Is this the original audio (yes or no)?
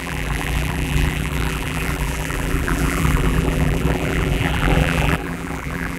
no